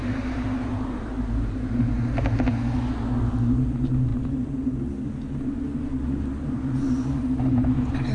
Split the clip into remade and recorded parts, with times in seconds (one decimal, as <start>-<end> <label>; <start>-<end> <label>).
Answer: 0.0-1.8 remade; 1.8-8.1 recorded